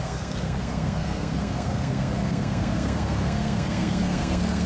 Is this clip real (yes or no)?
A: no